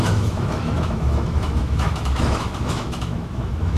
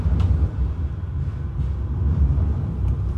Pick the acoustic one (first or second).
second